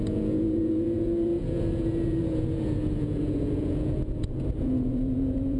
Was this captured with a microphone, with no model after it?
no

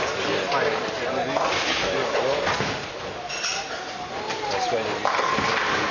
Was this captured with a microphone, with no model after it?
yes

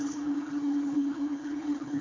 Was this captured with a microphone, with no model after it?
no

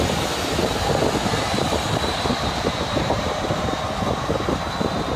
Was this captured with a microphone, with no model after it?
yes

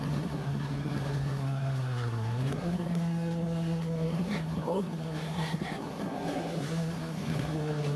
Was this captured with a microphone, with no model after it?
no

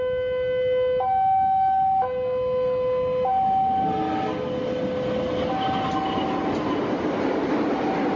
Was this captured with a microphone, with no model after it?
yes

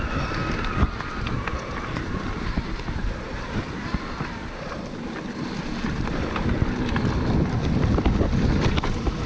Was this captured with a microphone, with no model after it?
yes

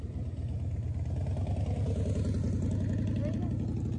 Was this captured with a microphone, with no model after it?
yes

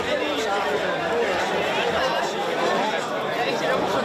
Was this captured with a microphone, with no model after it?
yes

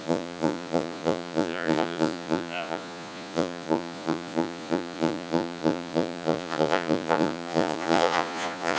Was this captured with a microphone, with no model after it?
no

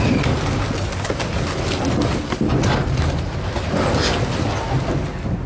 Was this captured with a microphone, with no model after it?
yes